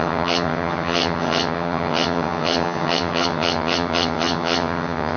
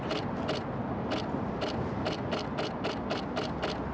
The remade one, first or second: first